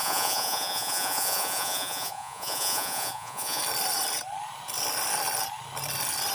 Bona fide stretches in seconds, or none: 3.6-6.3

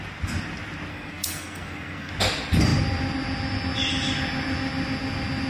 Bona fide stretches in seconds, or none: 0.0-0.9; 2.1-5.5

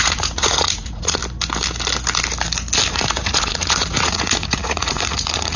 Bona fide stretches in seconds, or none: 1.2-2.9

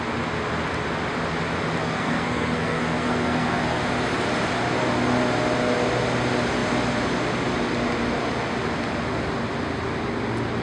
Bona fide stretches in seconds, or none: 0.0-1.8; 3.8-10.6

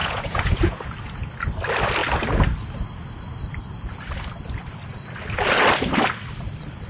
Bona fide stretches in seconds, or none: 0.9-6.9

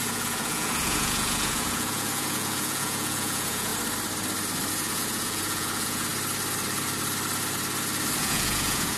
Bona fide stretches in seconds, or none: 3.7-4.7; 6.1-8.2

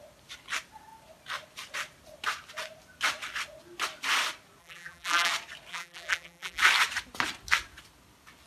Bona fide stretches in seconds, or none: 0.0-4.6; 5.3-5.7; 6.6-8.5

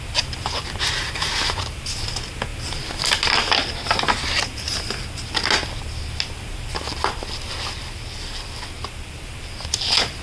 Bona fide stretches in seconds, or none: 0.0-10.2